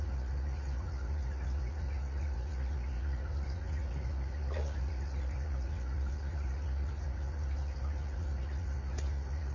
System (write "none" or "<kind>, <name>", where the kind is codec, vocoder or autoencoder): vocoder, Vocos